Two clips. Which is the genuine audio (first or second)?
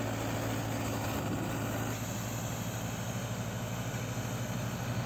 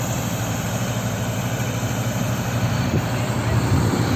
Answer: first